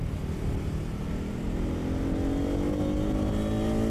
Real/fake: real